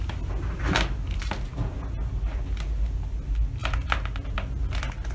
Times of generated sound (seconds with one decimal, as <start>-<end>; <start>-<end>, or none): none